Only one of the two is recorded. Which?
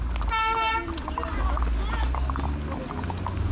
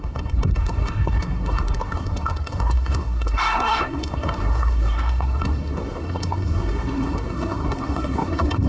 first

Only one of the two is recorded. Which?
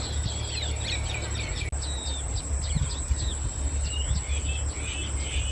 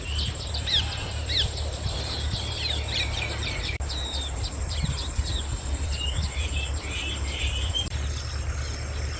first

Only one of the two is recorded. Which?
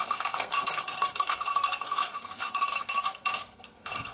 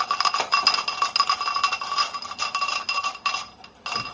second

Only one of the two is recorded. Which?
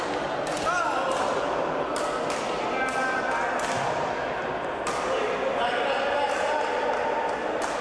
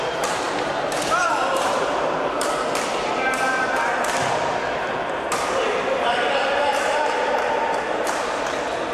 first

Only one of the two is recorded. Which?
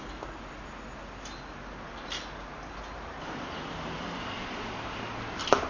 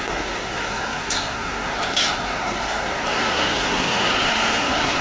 first